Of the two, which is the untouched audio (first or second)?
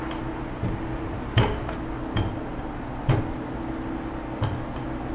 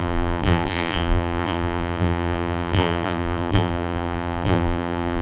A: first